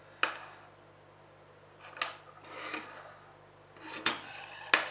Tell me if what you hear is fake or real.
real